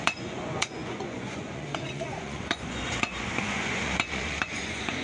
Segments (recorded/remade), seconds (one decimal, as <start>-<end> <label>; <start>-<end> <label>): 0.0-5.0 remade